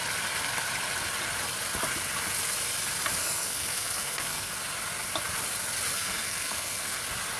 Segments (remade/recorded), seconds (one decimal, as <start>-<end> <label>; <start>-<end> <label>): 0.0-3.2 recorded; 3.2-4.5 remade; 4.5-5.9 recorded; 5.9-7.0 remade; 7.0-7.4 recorded